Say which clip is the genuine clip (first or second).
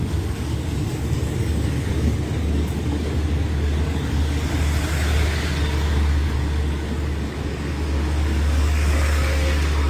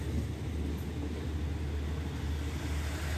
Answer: second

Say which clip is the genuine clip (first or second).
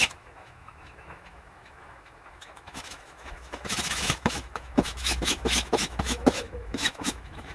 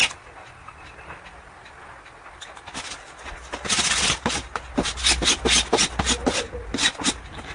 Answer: second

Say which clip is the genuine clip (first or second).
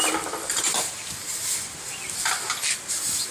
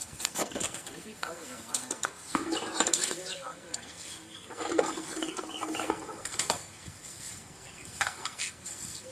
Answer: first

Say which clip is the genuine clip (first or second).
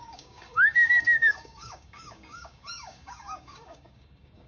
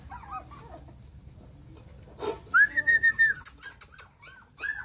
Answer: second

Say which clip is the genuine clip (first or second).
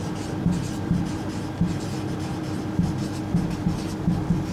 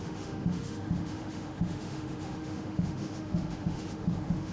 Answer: first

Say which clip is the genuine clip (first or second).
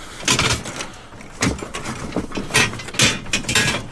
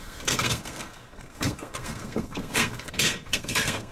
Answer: first